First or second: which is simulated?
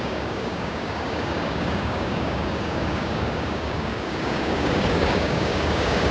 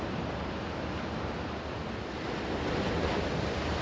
first